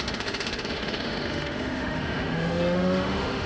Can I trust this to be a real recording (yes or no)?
no